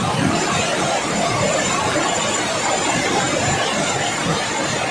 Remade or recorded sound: recorded